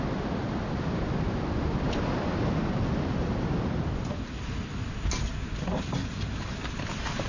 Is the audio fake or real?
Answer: real